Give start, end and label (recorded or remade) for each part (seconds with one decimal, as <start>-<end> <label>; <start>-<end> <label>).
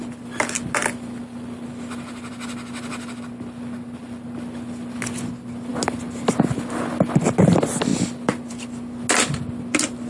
0.0-0.8 recorded; 0.8-2.3 remade; 2.3-7.9 recorded; 7.9-8.5 remade; 8.5-10.1 recorded